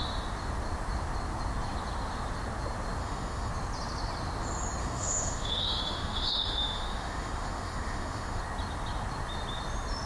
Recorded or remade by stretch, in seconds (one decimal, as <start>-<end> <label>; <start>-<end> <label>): 0.0-3.0 recorded; 3.0-3.5 remade; 3.5-4.8 recorded; 4.8-8.4 remade; 8.4-10.1 recorded